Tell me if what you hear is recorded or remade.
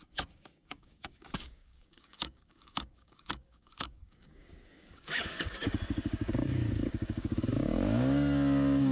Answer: remade